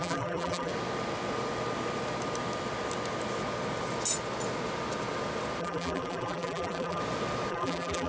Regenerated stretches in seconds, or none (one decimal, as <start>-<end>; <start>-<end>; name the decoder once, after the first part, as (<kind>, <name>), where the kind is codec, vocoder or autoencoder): 0.0-0.7 (vocoder, BigVGAN v2); 5.6-7.0; 7.5-8.1